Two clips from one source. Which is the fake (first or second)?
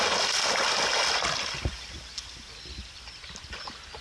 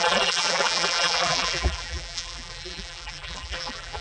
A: second